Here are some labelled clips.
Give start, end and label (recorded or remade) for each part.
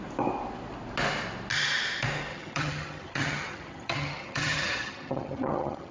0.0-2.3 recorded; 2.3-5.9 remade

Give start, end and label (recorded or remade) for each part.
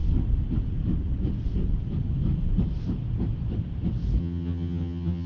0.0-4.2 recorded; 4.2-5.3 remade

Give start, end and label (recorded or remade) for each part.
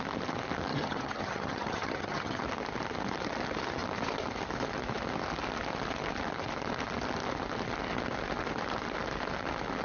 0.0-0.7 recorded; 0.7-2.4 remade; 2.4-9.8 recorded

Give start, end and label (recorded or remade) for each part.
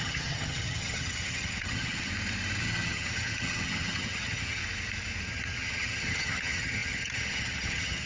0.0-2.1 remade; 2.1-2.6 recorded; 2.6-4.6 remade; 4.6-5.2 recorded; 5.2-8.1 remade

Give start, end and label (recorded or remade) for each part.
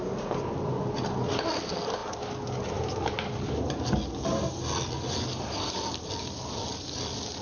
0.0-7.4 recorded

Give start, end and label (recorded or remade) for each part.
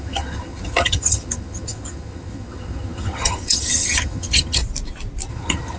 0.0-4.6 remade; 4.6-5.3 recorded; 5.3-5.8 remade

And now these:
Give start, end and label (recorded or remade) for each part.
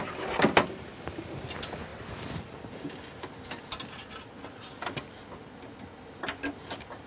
0.0-7.1 recorded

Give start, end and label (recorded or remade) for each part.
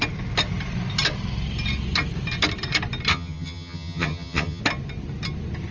0.0-3.1 recorded; 3.1-4.6 remade; 4.6-5.7 recorded